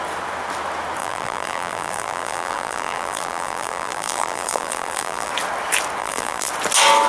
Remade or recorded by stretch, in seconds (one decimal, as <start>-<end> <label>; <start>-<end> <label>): 0.0-1.0 recorded; 1.0-5.3 remade; 5.3-6.0 recorded; 6.0-6.5 remade; 6.5-7.1 recorded